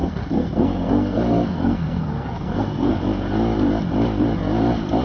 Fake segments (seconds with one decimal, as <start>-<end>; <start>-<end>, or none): 0.0-3.0